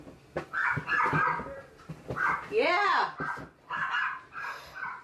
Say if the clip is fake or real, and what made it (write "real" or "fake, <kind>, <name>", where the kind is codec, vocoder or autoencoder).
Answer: real